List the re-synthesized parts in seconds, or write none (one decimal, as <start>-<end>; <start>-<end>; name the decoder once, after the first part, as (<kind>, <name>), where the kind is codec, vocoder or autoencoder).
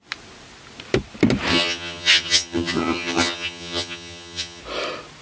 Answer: 1.5-4.6 (vocoder, HiFi-GAN)